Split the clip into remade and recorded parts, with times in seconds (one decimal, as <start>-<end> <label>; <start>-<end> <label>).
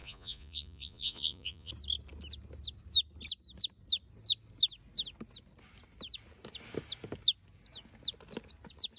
0.0-1.7 remade; 1.7-9.0 recorded